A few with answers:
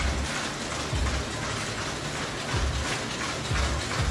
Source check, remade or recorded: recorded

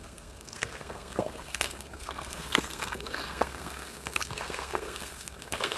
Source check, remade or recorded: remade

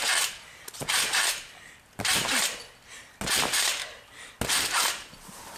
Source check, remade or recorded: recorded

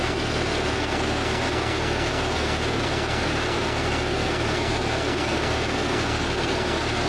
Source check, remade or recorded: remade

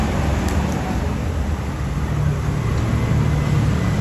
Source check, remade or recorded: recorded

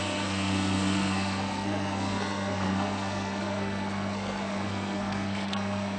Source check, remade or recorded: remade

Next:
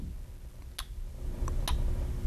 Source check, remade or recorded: recorded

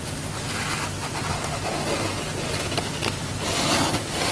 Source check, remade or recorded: recorded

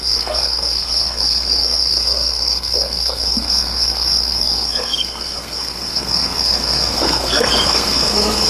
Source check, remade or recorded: remade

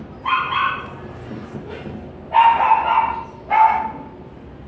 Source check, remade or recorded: recorded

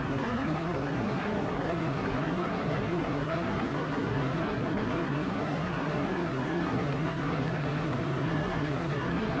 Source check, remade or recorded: remade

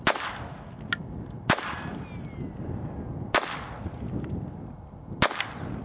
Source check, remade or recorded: recorded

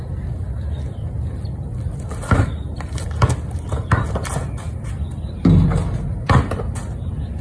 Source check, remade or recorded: recorded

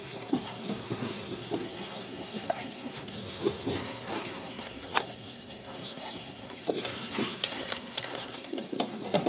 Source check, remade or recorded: remade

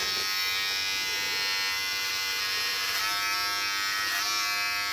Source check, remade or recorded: recorded